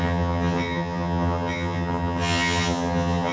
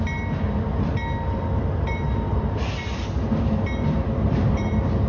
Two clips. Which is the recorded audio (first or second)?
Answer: second